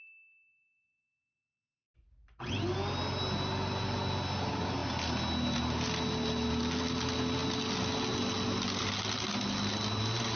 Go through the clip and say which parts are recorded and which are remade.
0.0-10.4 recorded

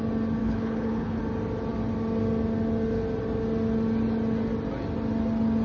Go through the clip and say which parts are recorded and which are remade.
0.0-0.4 recorded; 0.4-1.2 remade; 1.2-5.6 recorded

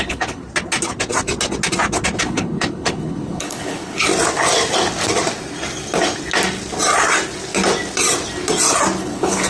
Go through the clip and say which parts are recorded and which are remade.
0.0-0.4 remade; 0.4-2.2 recorded; 2.2-4.1 remade; 4.1-9.0 recorded; 9.0-9.5 remade

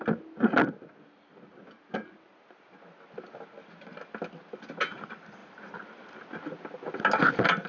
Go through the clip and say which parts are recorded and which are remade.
0.0-7.7 recorded

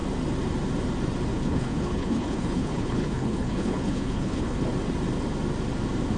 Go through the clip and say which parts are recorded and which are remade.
0.0-1.3 recorded; 1.3-4.6 remade; 4.6-6.2 recorded